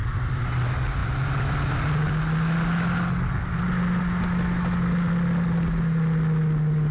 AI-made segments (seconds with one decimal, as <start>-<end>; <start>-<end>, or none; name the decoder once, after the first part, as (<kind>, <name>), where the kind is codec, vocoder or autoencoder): none